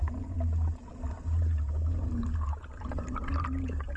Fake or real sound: real